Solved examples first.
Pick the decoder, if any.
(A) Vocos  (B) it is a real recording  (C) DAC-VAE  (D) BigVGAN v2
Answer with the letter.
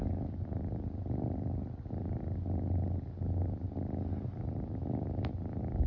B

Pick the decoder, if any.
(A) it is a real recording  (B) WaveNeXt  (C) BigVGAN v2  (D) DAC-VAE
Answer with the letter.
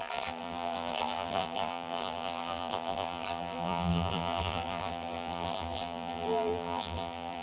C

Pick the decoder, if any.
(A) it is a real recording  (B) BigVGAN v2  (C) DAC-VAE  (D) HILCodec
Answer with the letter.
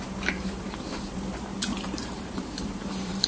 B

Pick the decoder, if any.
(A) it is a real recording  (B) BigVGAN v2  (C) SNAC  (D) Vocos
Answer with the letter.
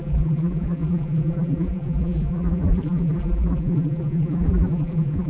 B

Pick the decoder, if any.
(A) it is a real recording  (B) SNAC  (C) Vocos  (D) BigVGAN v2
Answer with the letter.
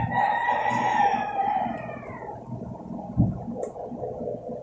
D